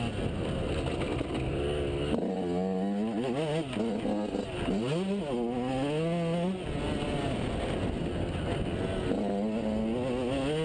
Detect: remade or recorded recorded